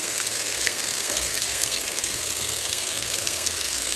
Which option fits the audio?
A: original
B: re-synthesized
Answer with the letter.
B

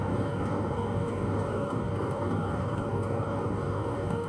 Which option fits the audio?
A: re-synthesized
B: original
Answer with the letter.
A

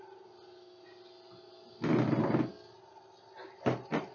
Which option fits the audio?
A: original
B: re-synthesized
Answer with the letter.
A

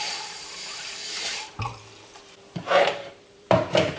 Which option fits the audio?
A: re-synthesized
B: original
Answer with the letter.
A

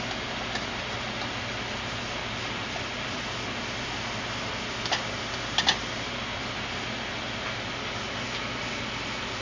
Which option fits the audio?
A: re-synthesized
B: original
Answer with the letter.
B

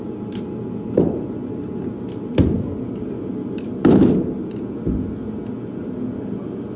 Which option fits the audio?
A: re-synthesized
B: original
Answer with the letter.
B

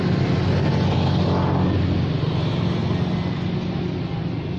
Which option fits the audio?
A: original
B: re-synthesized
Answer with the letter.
A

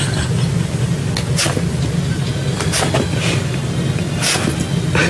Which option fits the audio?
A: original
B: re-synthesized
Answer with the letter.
A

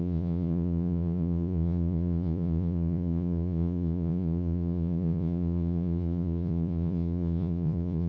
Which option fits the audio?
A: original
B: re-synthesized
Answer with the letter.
B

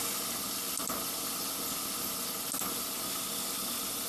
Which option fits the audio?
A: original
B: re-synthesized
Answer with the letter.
A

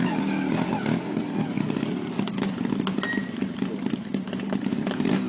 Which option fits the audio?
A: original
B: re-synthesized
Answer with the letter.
A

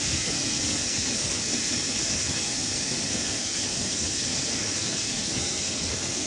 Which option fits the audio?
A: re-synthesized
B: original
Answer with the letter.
A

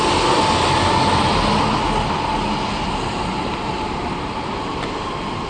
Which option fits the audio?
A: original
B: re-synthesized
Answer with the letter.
A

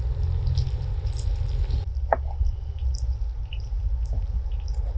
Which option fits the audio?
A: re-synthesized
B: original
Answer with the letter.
B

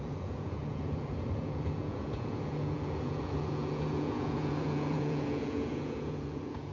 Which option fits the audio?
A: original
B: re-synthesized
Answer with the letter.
B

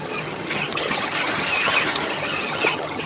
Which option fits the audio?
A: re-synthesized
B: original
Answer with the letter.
A